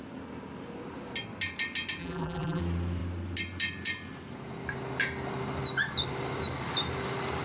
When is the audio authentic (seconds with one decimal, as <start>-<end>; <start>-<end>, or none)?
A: 0.0-2.0; 2.6-7.4